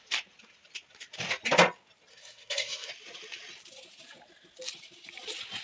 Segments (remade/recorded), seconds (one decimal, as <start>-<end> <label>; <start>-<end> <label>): 0.0-2.1 recorded; 2.1-2.9 remade; 2.9-5.6 recorded

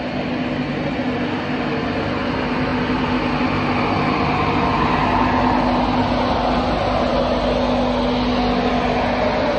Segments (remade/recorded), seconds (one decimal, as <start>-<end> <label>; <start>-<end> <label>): 0.0-9.6 recorded

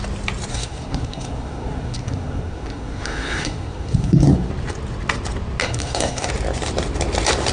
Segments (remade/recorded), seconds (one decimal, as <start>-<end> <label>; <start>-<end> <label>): 0.0-0.5 recorded; 0.5-4.5 remade; 4.5-5.6 recorded; 5.6-6.3 remade; 6.3-7.5 recorded

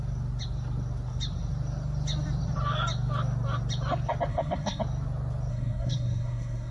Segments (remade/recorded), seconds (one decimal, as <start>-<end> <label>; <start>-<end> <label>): 0.0-4.3 recorded; 4.3-4.8 remade; 4.8-5.5 recorded; 5.5-6.7 remade